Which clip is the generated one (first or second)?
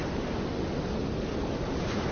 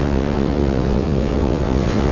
second